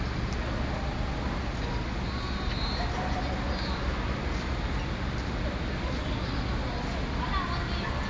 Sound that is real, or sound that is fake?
real